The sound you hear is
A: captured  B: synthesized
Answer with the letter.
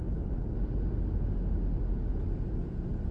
A